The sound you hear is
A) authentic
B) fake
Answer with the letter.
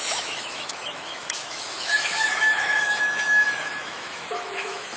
B